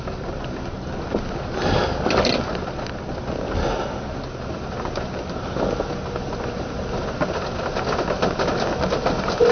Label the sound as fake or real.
real